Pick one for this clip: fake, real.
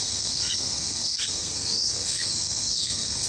fake